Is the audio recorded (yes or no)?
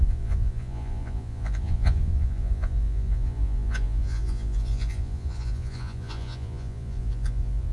no